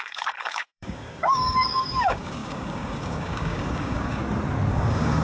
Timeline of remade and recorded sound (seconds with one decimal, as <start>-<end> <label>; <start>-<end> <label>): 0.0-4.2 remade; 4.2-4.7 recorded; 4.7-5.2 remade